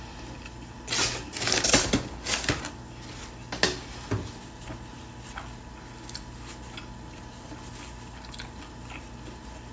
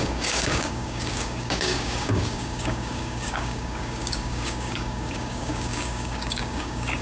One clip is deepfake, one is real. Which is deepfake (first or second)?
second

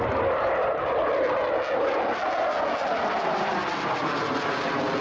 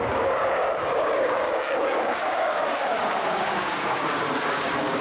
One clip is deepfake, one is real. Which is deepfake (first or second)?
second